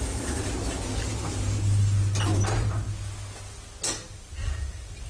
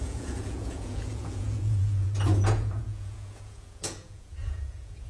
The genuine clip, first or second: first